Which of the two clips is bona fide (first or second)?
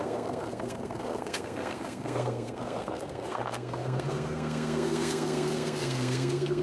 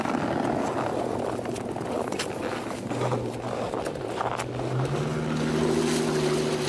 second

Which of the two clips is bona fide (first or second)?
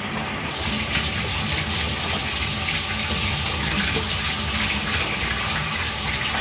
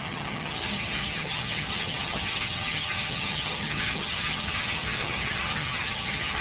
first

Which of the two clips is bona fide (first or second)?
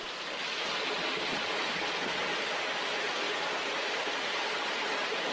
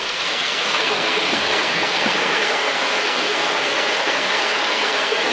first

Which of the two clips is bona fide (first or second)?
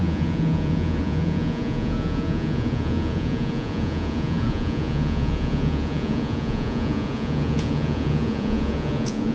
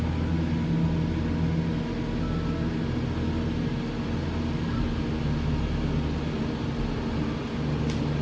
second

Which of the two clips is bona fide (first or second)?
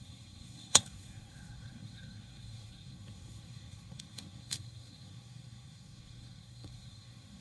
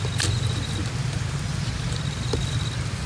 second